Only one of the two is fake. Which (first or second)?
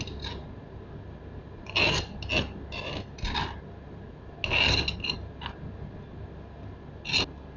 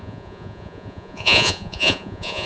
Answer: second